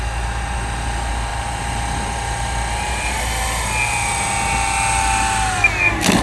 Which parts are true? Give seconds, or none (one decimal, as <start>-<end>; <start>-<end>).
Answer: 0.0-6.2